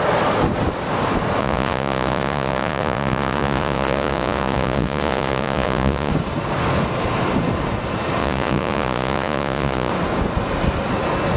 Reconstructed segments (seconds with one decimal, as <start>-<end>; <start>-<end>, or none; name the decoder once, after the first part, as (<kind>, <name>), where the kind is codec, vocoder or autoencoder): 1.4-6.1 (vocoder, Vocos); 8.2-9.9